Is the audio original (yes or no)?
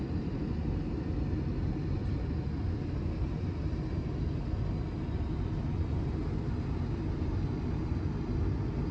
yes